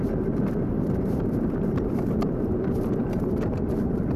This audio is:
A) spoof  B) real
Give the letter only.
A